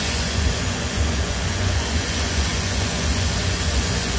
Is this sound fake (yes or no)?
yes